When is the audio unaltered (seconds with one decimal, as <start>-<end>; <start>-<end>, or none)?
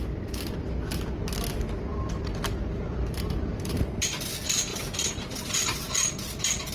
0.0-1.9; 3.7-6.7